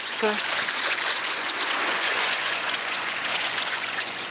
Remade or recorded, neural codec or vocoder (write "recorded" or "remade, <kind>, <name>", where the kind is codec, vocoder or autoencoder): remade, vocoder, Vocos